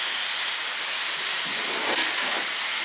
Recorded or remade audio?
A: recorded